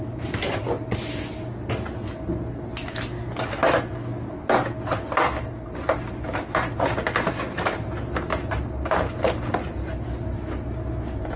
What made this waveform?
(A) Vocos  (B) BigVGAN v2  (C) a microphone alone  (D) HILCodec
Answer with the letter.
C